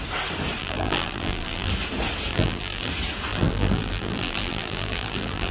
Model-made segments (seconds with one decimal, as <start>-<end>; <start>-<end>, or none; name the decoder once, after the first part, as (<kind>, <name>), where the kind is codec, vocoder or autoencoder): 0.6-1.7 (vocoder, BigVGAN v2); 2.3-2.9; 3.3-5.5

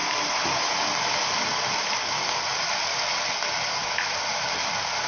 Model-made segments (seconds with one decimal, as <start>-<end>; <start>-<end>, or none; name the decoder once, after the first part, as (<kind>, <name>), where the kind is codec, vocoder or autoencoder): 3.8-4.3 (autoencoder, DAC-VAE)

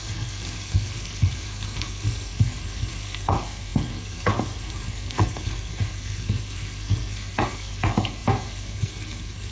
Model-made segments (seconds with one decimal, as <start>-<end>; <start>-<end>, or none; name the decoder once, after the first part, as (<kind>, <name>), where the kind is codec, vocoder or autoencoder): 0.0-9.5 (codec, SNAC)

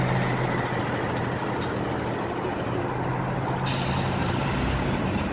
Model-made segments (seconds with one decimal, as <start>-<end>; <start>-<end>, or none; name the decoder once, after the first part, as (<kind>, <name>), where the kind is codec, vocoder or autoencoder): 4.2-5.3 (vocoder, BigVGAN v2)